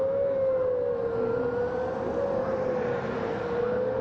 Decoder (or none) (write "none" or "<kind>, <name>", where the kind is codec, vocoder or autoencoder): none